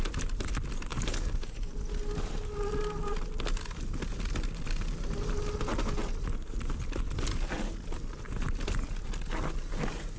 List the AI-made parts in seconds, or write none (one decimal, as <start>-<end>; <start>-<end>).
0.9-1.7